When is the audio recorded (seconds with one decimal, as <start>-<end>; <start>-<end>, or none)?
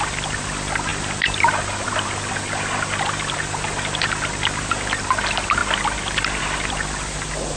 0.0-7.6